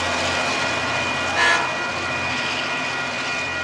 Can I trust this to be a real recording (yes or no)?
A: yes